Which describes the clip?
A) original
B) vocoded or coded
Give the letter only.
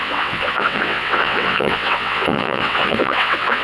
B